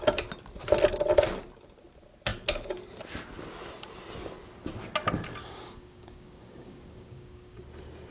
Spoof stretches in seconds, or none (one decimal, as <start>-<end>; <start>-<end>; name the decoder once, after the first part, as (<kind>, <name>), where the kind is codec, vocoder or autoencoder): 5.4-7.6 (codec, DAC)